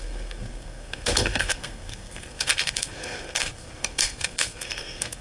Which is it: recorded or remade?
remade